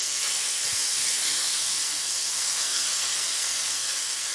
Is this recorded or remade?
remade